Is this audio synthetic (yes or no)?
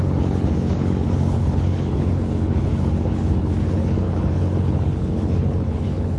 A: yes